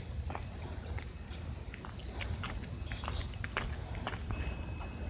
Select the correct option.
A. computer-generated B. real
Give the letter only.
B